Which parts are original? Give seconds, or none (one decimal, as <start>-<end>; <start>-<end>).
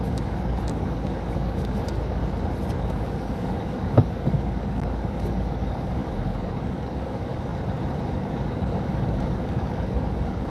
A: 2.2-2.9; 7.5-8.1